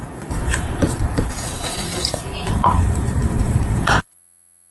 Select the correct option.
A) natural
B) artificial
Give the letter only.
B